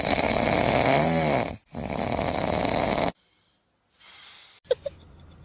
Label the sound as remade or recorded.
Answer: recorded